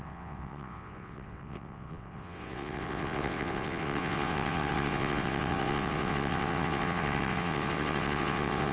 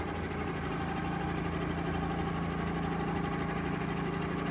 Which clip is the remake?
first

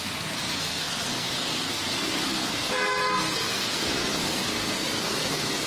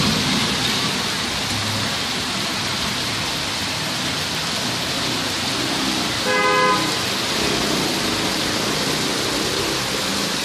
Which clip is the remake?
first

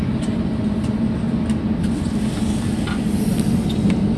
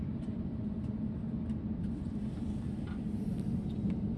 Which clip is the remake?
second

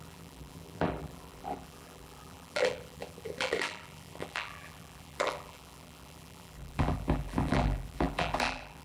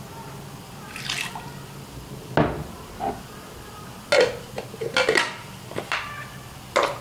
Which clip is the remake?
first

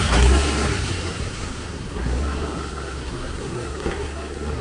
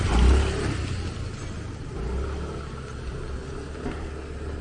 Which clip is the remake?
first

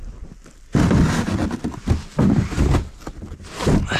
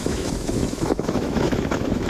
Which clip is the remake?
second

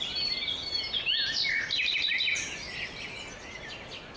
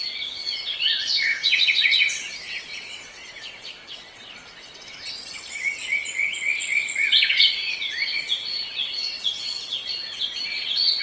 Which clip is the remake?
second